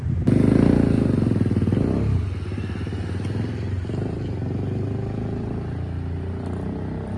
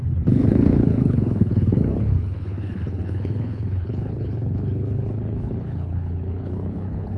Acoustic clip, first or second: first